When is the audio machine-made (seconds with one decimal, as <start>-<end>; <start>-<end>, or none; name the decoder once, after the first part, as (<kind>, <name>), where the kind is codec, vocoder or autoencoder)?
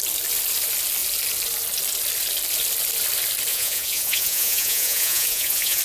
3.5-5.8 (vocoder, Vocos)